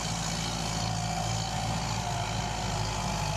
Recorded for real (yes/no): yes